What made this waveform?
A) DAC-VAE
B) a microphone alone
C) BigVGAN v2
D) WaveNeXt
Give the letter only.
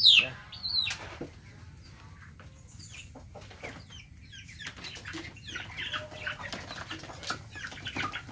B